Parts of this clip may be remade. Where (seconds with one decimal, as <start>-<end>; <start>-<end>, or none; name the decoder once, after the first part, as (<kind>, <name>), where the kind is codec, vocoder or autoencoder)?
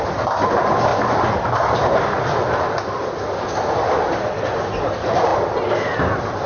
none